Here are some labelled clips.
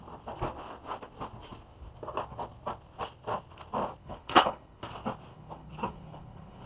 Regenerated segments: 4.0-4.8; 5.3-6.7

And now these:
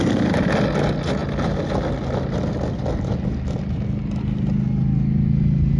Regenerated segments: none

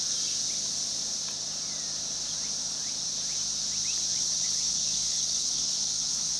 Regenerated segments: 4.1-6.4

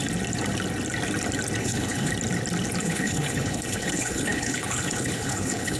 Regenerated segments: 1.6-2.1; 2.8-5.8